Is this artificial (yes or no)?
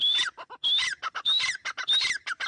no